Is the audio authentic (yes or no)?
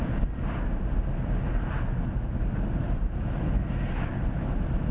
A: yes